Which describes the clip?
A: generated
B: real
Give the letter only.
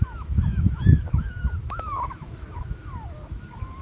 A